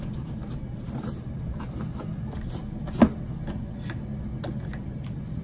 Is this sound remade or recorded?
recorded